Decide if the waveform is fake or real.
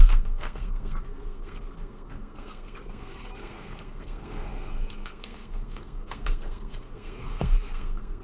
fake